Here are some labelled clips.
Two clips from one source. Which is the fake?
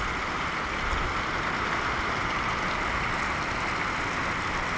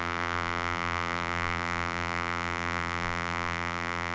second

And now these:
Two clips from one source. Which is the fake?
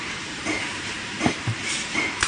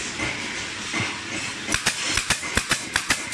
first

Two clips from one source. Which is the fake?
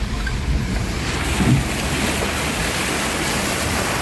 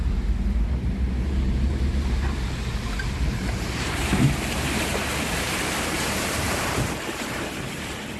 second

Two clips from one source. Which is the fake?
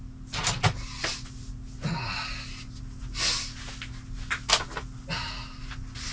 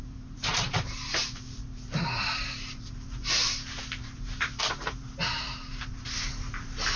second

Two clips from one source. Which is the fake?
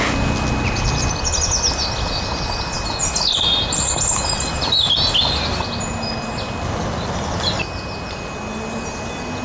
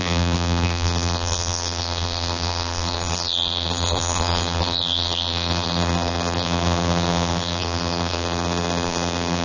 second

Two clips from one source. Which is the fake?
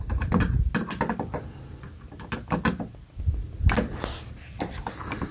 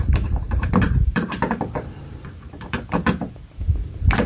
second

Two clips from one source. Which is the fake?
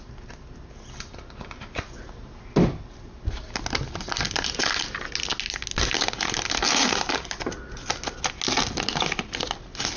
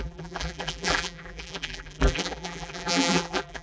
second